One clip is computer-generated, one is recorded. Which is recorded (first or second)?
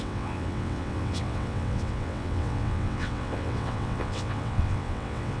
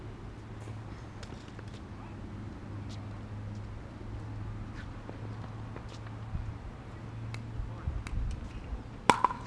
second